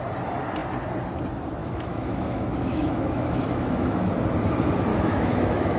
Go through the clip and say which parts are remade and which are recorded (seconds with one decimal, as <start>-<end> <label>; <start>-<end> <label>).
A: 0.0-1.6 recorded; 1.6-4.1 remade; 4.1-4.9 recorded; 4.9-5.8 remade